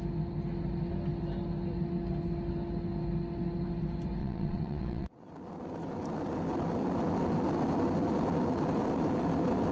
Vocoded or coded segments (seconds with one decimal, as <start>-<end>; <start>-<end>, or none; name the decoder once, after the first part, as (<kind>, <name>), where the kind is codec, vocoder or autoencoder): 4.2-5.3 (vocoder, WaveNeXt)